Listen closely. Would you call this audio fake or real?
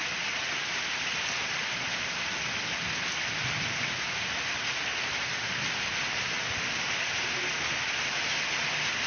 real